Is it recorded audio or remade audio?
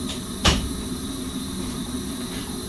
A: remade